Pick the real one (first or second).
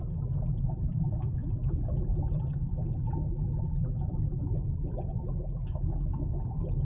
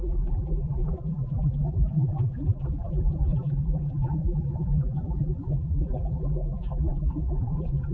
first